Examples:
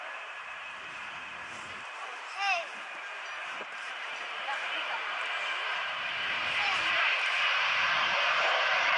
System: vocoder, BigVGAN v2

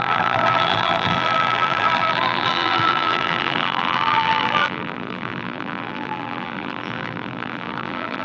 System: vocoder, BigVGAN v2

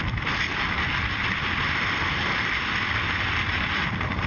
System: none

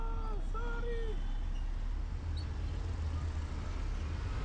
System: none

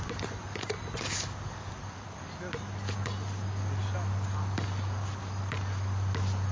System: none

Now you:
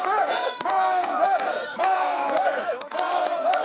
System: codec, SNAC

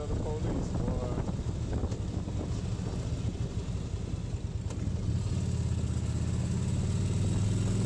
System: none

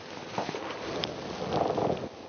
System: none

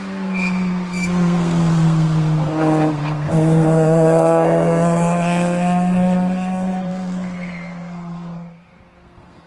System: codec, SNAC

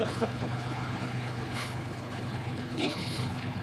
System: codec, HILCodec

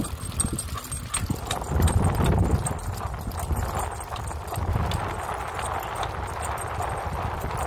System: none